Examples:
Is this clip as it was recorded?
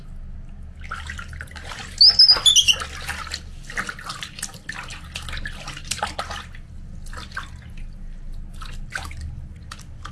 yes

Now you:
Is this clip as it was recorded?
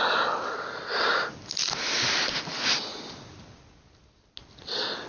yes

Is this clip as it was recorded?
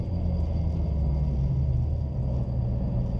yes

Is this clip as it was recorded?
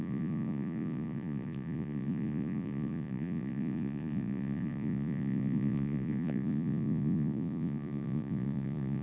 no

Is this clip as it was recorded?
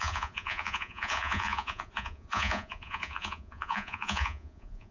no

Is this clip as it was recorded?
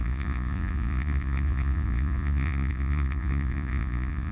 no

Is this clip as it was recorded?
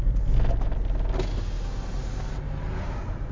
yes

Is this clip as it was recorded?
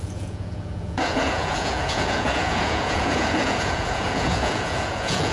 no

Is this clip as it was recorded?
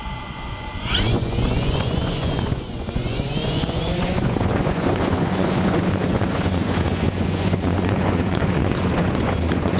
no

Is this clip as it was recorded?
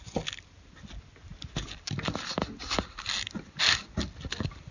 yes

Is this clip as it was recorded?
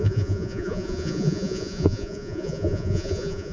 no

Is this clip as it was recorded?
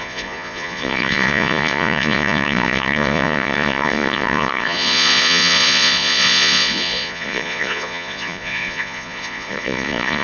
no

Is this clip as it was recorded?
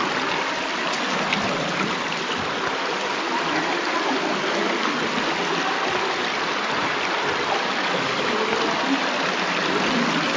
yes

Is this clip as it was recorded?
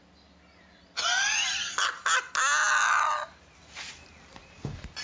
yes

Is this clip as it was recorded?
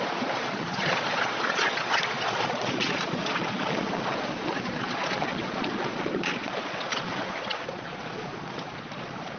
no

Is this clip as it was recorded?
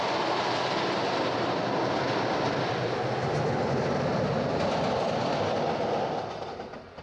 yes